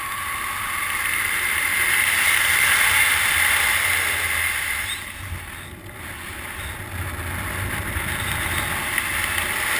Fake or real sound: real